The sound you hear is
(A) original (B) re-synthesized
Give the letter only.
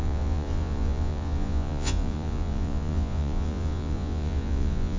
B